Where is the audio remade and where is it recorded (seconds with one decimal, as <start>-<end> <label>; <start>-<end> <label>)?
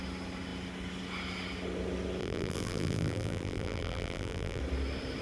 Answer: 0.0-2.2 recorded; 2.2-4.6 remade; 4.6-5.2 recorded